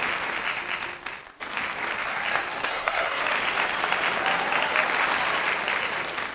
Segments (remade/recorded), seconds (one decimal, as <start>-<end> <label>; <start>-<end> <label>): 0.0-2.6 recorded; 2.6-3.2 remade; 3.2-6.3 recorded